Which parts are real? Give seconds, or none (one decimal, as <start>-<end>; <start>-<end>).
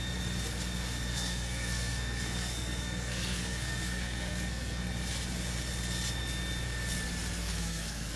0.0-1.1; 4.8-7.4